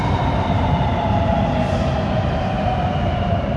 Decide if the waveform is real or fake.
fake